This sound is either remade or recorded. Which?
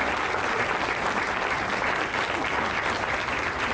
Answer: recorded